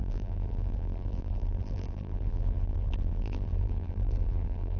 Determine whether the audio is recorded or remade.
remade